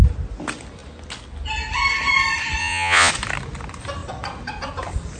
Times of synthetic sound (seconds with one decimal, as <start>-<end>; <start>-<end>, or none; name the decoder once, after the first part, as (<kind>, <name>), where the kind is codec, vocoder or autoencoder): 2.6-3.1 (vocoder, Vocos)